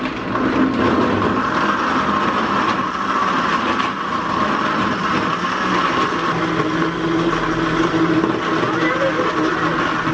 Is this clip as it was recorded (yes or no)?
yes